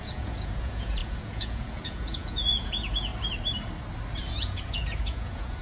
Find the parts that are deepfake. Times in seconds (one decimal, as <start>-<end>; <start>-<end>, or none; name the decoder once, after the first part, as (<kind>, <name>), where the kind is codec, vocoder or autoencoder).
0.0-3.1 (vocoder, Vocos); 4.3-5.6